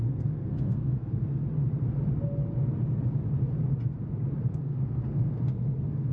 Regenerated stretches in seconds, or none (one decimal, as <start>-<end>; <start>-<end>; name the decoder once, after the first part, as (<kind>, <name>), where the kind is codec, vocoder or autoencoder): 0.0-1.4 (codec, SNAC); 4.5-6.1